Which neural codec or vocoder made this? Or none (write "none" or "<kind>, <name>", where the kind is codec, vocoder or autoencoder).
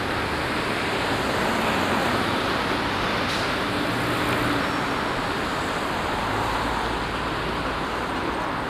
none